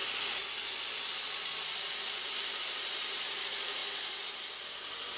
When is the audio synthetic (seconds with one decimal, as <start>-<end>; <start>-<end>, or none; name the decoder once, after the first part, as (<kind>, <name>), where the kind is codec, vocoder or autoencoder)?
3.1-3.8 (vocoder, BigVGAN v2); 4.6-5.2